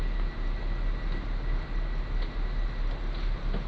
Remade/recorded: recorded